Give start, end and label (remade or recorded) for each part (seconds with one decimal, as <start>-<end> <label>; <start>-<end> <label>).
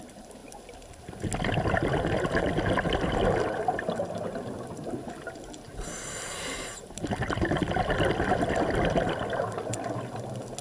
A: 0.0-10.6 recorded